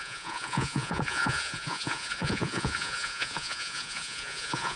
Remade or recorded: remade